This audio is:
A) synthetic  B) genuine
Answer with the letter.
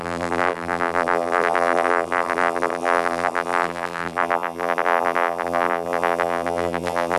A